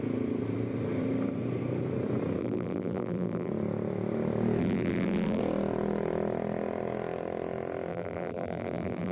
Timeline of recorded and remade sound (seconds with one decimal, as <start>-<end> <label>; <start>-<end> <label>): 0.0-2.4 recorded; 2.4-3.5 remade; 3.5-4.6 recorded; 4.6-5.4 remade; 5.4-7.9 recorded; 7.9-9.1 remade